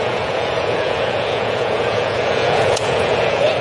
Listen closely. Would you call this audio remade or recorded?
remade